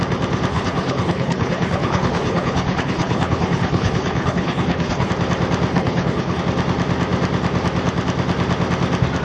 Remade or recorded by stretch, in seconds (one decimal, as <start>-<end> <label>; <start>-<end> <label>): 0.0-0.5 recorded; 0.5-5.1 remade; 5.1-5.7 recorded; 5.7-6.4 remade; 6.4-9.2 recorded